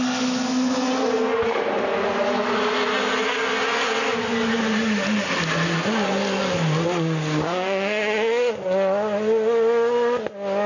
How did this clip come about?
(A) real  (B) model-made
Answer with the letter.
A